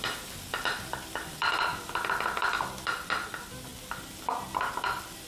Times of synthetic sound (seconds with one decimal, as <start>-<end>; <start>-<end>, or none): 0.0-1.7; 2.5-3.7; 4.8-5.3